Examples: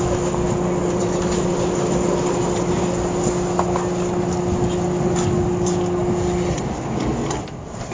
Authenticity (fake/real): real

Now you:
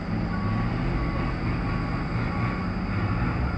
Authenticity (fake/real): real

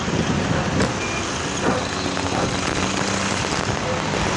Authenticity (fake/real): real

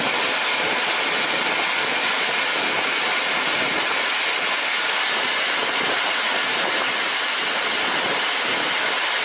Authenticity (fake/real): real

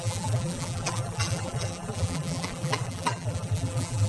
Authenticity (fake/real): fake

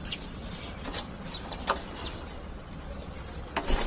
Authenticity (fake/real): fake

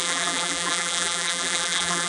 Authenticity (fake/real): fake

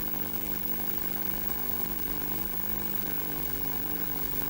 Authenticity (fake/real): fake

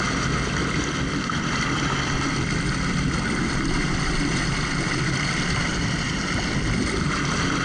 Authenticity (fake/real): fake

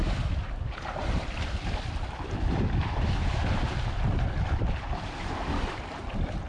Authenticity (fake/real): fake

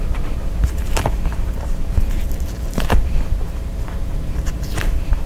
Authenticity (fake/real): fake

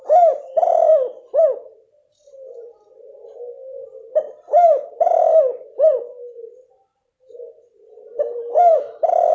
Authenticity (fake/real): fake